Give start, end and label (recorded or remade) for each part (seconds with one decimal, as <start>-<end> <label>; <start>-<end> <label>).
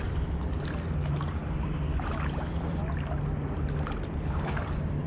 0.0-5.1 recorded